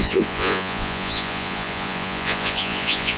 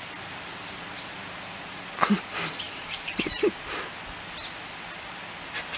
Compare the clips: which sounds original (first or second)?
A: second